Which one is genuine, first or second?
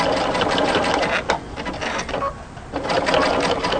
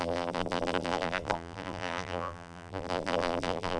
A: first